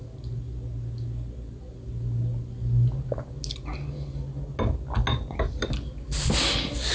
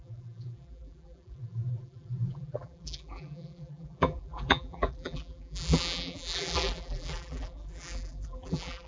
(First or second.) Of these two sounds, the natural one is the first